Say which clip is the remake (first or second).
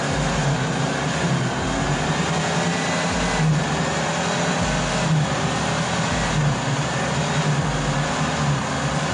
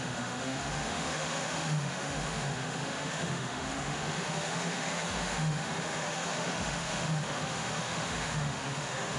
second